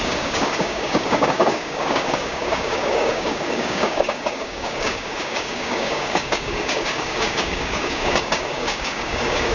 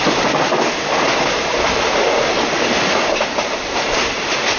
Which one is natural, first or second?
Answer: second